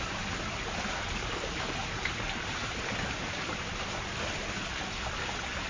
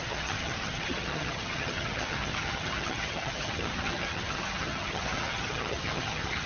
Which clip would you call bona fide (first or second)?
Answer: first